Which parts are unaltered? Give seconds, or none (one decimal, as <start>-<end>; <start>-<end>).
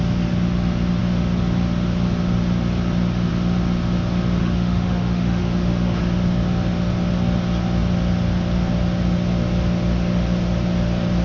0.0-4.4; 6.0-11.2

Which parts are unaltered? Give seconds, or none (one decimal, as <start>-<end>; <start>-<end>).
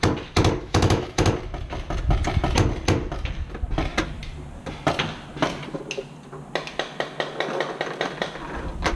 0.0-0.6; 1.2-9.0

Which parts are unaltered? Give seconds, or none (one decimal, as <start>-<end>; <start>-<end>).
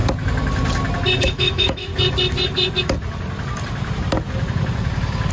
0.0-1.2; 1.9-5.3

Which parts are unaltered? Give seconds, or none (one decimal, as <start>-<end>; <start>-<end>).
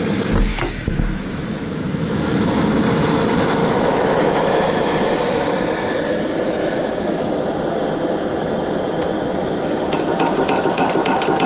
0.0-0.5; 2.7-3.6; 4.8-6.6; 7.3-11.5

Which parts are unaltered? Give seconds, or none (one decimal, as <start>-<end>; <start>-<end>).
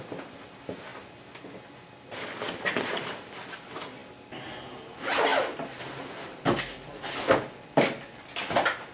0.0-8.9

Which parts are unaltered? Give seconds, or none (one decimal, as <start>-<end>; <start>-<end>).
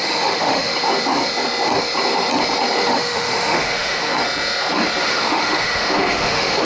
0.7-2.9; 4.1-5.0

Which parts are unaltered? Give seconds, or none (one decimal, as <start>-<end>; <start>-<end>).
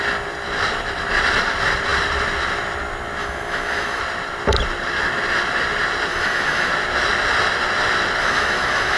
0.0-3.2; 4.0-6.1; 6.7-8.2